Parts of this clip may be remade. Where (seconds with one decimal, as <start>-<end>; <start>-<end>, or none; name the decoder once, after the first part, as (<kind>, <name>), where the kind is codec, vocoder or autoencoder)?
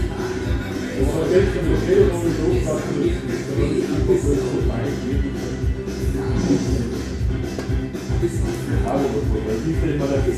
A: none